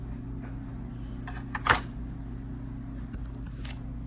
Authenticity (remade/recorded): recorded